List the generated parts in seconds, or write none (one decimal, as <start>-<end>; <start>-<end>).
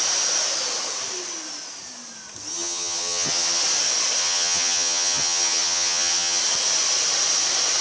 2.5-3.6; 4.2-6.4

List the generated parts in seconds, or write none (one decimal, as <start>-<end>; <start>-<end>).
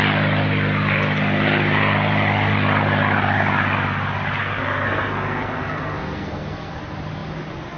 4.4-6.7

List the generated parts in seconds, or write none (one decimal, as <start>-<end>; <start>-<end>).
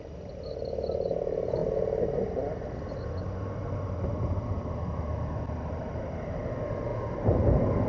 none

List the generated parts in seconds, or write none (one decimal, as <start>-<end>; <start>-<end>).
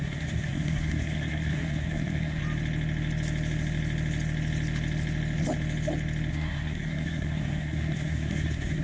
0.0-2.4; 6.3-8.8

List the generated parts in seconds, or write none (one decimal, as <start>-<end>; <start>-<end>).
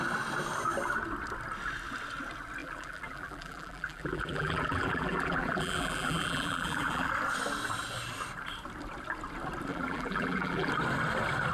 2.6-7.1; 9.7-10.7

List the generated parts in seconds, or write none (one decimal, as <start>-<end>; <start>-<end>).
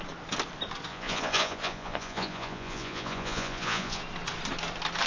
0.9-4.0